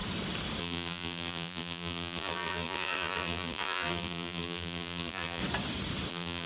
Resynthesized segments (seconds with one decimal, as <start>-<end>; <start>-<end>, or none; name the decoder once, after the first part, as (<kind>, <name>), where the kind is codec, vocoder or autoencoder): 0.6-5.4 (vocoder, BigVGAN v2); 6.1-6.5